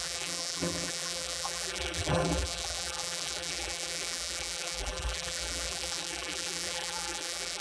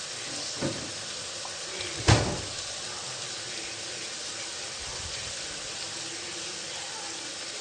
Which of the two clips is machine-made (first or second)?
first